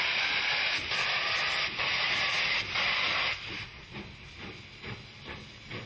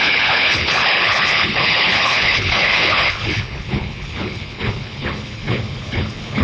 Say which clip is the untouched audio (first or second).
first